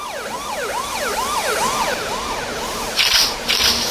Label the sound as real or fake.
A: real